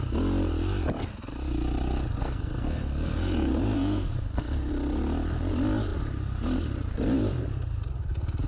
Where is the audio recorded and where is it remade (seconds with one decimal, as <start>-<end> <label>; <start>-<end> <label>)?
0.0-2.2 recorded; 2.2-4.7 remade; 4.7-8.5 recorded